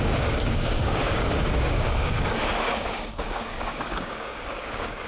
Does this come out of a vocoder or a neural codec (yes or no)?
yes